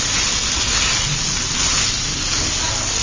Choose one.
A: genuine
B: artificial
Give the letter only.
A